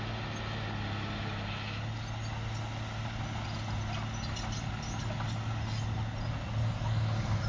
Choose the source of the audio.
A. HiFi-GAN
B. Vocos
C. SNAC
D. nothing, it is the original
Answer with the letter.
D